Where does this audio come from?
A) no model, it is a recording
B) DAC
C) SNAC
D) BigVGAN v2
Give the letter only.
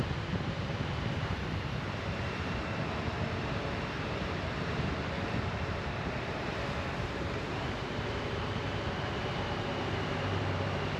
D